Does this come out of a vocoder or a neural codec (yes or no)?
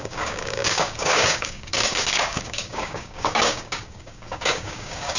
yes